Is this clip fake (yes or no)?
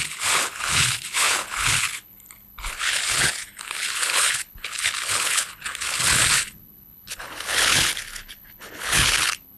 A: yes